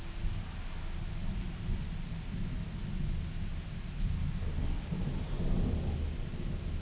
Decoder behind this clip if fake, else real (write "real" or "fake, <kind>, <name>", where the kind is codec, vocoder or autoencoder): real